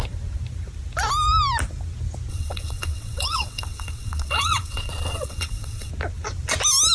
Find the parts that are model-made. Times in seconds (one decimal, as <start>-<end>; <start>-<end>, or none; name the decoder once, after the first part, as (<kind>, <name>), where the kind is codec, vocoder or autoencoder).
2.3-5.9 (vocoder, WaveNeXt)